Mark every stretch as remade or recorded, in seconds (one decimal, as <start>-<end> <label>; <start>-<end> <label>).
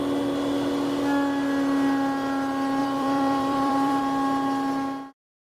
0.0-2.8 recorded; 2.8-4.0 remade; 4.0-5.5 recorded